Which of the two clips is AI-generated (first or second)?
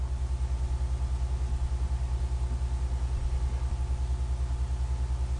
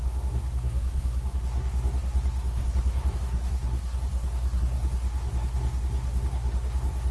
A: second